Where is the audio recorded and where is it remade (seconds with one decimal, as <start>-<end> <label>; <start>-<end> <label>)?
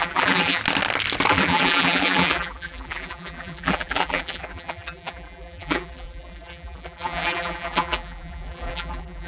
0.0-0.6 remade; 0.6-1.3 recorded; 1.3-9.3 remade